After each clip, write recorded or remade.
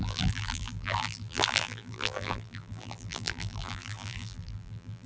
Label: remade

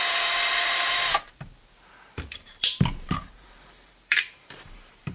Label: remade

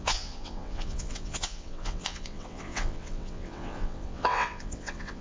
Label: remade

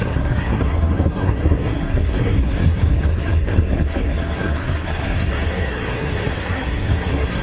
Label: remade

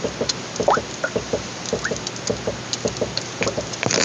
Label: recorded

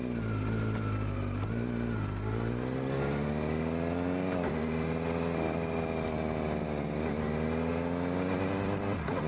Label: recorded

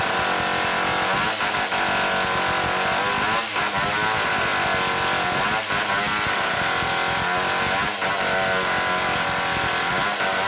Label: recorded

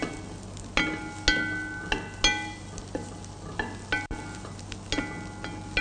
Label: recorded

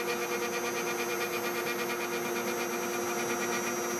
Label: recorded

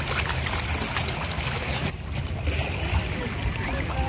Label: recorded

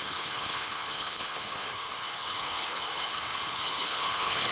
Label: remade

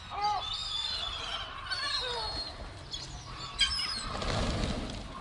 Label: recorded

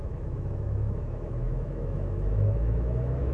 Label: remade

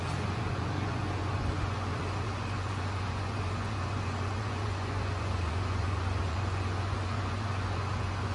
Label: remade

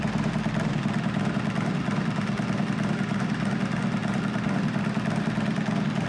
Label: recorded